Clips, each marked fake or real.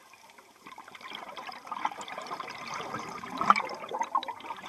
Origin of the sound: fake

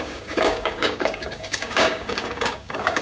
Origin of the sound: fake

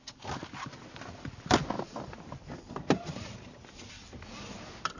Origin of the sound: real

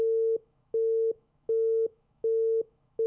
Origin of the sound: fake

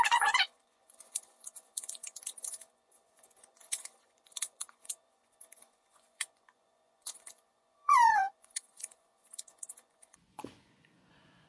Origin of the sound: fake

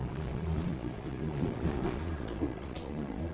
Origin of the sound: fake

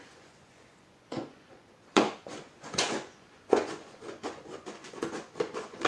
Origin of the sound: fake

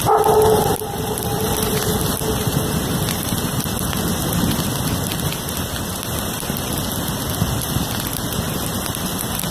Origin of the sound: fake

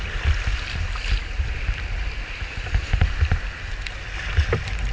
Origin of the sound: real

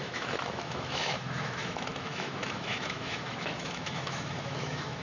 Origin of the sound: fake